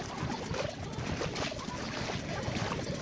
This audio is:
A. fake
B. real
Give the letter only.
B